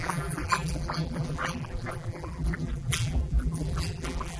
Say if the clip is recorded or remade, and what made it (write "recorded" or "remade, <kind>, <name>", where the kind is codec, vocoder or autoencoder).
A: remade, vocoder, BigVGAN v2